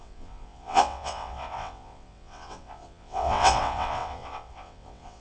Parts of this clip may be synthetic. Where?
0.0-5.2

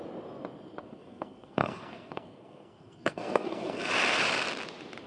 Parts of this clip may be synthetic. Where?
0.8-3.9

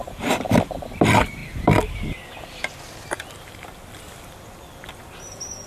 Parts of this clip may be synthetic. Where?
0.0-1.4; 3.5-5.7